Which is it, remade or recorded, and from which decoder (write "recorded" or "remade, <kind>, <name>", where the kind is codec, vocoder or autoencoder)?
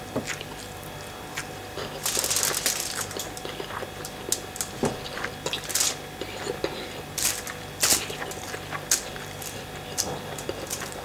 recorded